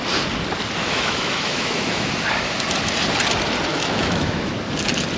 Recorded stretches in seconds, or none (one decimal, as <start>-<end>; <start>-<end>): 0.0-0.8; 2.1-3.7; 4.5-5.2